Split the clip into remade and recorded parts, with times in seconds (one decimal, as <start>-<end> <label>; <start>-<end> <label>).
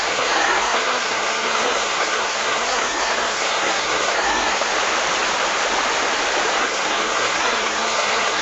0.0-4.7 remade; 4.7-6.6 recorded; 6.6-8.4 remade